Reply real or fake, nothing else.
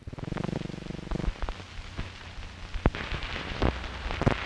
real